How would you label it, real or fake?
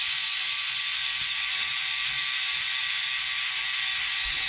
real